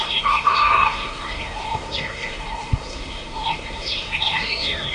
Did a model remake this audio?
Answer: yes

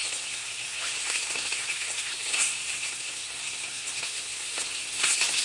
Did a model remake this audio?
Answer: yes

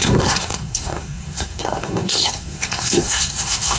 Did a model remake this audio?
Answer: yes